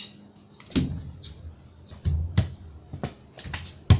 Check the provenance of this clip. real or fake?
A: real